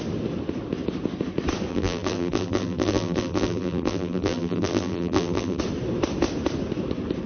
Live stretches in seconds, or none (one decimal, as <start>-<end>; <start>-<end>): 0.0-1.7; 5.6-7.3